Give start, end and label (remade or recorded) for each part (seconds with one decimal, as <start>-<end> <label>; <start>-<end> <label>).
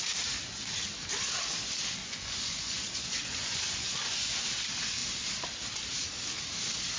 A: 0.0-2.0 recorded; 2.0-4.4 remade; 4.4-7.0 recorded